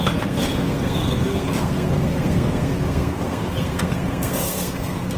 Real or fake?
fake